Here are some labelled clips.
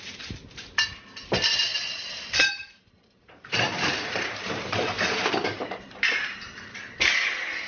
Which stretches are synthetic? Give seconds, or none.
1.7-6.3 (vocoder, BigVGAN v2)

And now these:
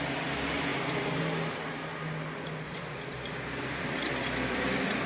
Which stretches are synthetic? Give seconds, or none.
0.0-0.7 (vocoder, BigVGAN v2); 3.8-5.1